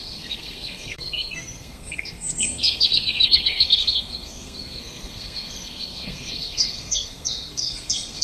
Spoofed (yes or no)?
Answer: yes